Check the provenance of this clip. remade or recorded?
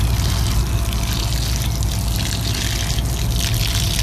recorded